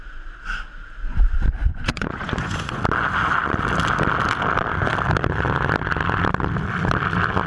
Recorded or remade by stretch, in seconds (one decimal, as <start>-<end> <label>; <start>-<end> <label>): 0.0-1.5 recorded; 1.5-2.8 remade; 2.8-7.5 recorded